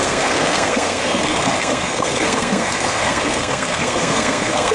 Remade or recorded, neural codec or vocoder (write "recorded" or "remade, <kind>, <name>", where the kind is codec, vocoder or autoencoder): remade, codec, SNAC